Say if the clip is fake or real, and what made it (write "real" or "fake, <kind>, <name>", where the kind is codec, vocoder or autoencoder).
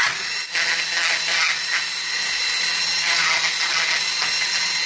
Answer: real